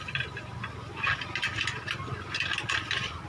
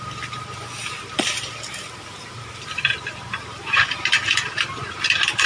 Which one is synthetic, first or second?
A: second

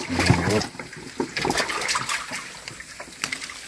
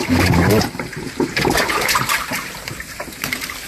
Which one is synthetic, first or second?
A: second